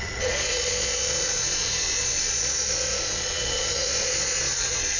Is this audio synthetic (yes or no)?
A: yes